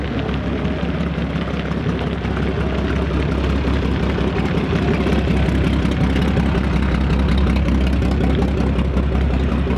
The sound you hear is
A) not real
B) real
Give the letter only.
B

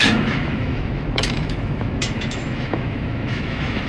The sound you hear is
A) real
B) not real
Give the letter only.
B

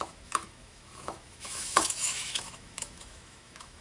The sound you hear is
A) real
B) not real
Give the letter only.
B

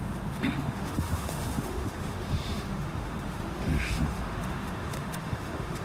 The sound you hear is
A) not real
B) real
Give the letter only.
A